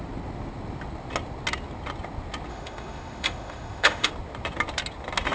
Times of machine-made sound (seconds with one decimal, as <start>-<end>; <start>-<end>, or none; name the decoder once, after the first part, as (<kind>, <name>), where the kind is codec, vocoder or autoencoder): 2.5-4.1 (autoencoder, DAC-VAE)